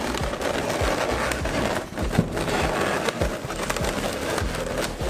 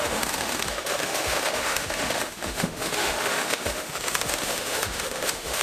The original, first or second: first